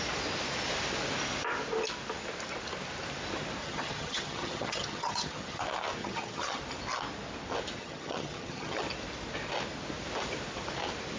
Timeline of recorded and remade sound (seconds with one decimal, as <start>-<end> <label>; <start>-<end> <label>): 0.0-3.6 recorded; 3.6-5.6 remade; 5.6-6.0 recorded; 6.0-6.6 remade; 6.6-7.8 recorded; 7.8-8.8 remade; 8.8-11.2 recorded